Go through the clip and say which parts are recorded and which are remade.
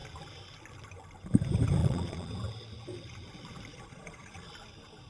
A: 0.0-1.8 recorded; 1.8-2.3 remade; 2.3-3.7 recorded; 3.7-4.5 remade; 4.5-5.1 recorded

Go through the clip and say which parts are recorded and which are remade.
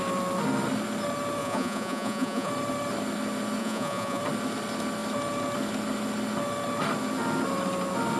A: 0.0-1.4 recorded; 1.4-2.5 remade; 2.5-3.6 recorded; 3.6-4.2 remade; 4.2-8.2 recorded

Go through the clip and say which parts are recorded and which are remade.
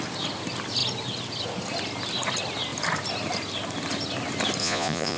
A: 0.0-4.6 recorded; 4.6-5.2 remade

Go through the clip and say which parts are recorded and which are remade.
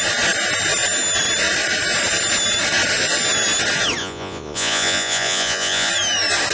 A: 0.0-4.0 recorded; 4.0-5.9 remade; 5.9-6.5 recorded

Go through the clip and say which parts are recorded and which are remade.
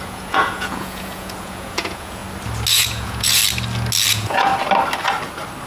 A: 0.0-2.2 remade; 2.2-2.7 recorded; 2.7-3.4 remade; 3.4-4.1 recorded; 4.1-4.5 remade; 4.5-5.7 recorded